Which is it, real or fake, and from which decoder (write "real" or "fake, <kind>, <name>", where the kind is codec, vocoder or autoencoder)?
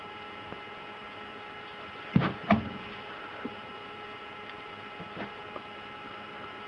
fake, vocoder, BigVGAN v2